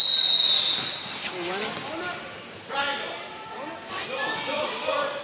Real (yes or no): yes